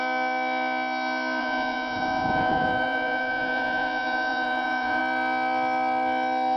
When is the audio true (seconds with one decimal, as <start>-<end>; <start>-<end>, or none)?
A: 0.0-1.4; 5.0-6.6